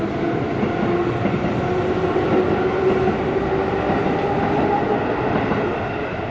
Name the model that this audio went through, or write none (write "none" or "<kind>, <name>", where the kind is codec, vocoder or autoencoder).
none